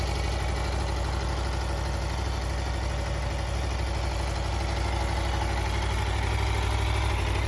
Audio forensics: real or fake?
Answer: real